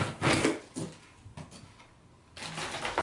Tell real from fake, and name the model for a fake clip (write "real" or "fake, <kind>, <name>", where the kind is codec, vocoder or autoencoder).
real